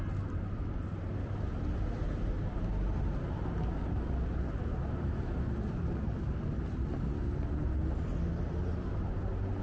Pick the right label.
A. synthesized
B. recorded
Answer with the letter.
B